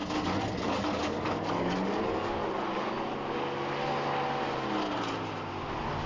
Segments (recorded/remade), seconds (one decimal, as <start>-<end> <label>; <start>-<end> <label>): 0.0-0.6 recorded; 0.6-2.4 remade; 2.4-6.1 recorded